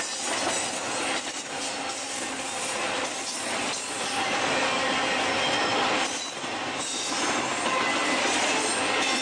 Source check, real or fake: real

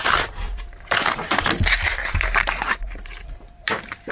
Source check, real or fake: fake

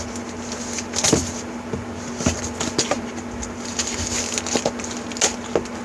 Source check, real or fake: real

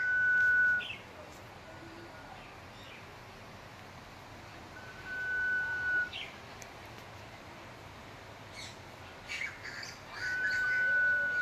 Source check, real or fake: real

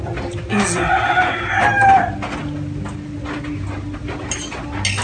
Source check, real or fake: real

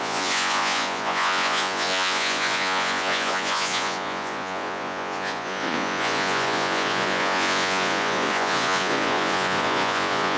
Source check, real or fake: fake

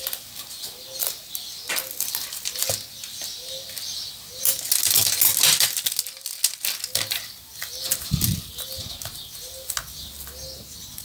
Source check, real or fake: real